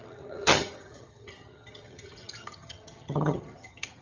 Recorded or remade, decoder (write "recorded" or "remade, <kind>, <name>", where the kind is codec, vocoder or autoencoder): remade, vocoder, HiFi-GAN